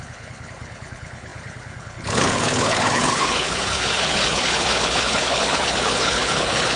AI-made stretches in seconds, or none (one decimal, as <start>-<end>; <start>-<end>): 0.0-6.8

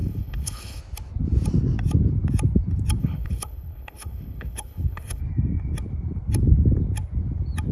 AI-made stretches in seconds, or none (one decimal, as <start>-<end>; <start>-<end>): 0.0-0.8; 3.0-5.2

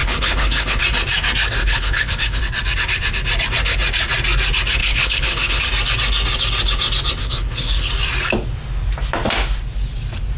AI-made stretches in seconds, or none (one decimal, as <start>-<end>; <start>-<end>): 0.0-0.8; 1.6-2.4; 4.8-5.6; 7.2-7.9

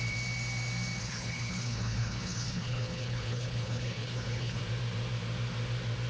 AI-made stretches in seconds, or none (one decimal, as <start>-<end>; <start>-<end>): 1.0-4.6

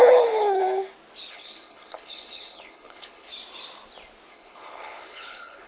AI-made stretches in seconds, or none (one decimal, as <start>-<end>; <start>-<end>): 0.0-0.6; 1.3-3.3; 4.3-5.7

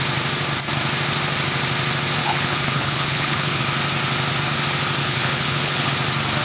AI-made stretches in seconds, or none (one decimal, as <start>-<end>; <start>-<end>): 2.2-3.6; 5.0-5.9

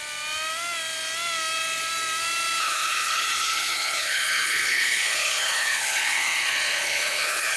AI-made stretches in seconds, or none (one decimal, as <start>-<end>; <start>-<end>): 2.6-7.6

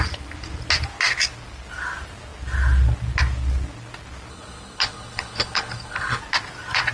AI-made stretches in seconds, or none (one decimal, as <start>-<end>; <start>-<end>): 4.3-6.2